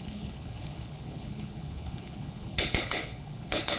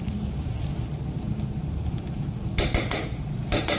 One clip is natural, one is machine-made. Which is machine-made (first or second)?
first